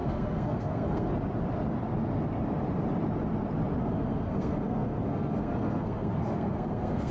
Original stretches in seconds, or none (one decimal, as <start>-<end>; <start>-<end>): 1.1-3.8